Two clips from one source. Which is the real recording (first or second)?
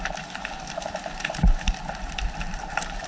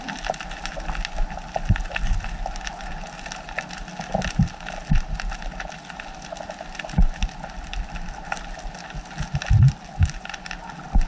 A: second